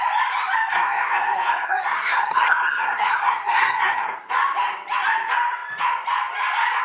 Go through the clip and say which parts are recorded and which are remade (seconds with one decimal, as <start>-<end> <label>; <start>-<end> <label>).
0.0-0.7 recorded; 0.7-4.3 remade; 4.3-6.8 recorded